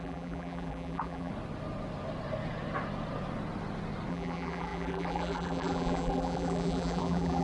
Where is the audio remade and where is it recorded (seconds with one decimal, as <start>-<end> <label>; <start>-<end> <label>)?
0.0-1.3 remade; 1.3-4.1 recorded; 4.1-7.4 remade